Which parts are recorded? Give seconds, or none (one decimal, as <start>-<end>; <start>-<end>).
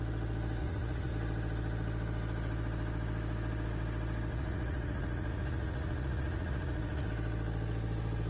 0.0-0.6; 1.1-4.3; 7.1-8.3